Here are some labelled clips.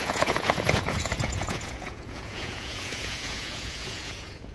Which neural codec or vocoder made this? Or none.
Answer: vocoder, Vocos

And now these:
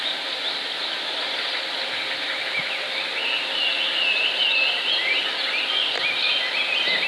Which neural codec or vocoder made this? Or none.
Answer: none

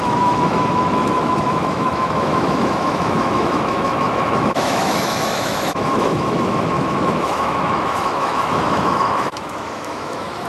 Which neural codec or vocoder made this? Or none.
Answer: autoencoder, DAC-VAE